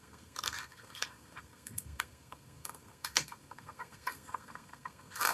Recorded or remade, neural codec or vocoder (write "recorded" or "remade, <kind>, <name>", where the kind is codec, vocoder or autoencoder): remade, codec, SNAC